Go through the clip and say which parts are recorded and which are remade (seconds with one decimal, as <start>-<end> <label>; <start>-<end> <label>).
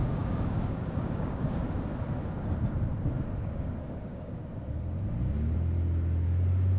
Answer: 0.0-1.6 remade; 1.6-3.4 recorded; 3.4-4.5 remade; 4.5-6.8 recorded